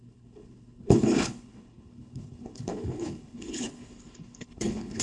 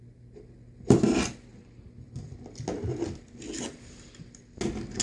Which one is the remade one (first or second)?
first